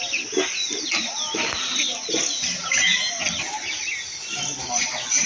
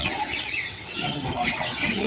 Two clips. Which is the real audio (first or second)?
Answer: first